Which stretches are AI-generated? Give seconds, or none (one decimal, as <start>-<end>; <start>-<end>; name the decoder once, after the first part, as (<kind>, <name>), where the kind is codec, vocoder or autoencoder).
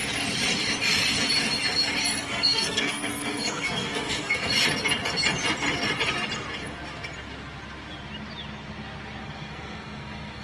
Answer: 2.2-4.5 (codec, SNAC); 9.2-10.4